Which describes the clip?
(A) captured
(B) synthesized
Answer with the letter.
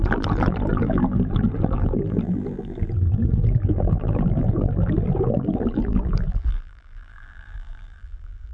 B